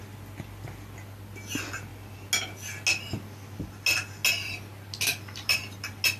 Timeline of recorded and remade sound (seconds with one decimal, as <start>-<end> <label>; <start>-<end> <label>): 0.0-6.2 recorded